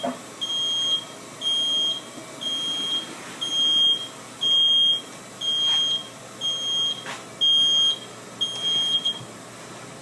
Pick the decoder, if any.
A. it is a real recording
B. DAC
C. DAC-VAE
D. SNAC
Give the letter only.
A